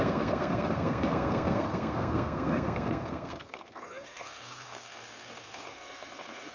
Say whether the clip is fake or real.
fake